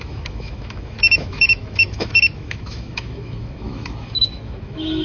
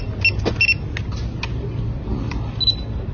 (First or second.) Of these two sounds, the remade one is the first